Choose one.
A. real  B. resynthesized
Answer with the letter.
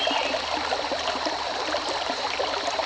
A